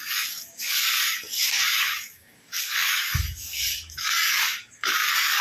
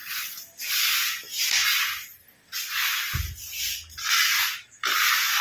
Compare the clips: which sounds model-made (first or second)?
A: first